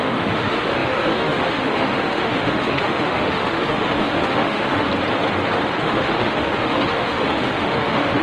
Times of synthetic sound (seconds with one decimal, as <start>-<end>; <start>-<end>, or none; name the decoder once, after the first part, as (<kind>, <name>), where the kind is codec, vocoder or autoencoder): 0.0-4.9 (autoencoder, DAC-VAE); 5.8-8.2